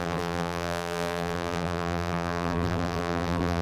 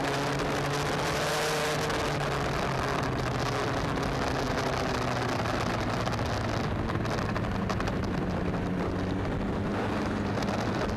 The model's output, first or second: first